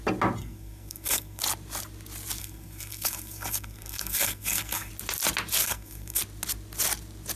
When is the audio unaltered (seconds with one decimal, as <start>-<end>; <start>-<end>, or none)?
0.0-0.4; 1.4-2.4; 4.9-5.6; 6.2-7.4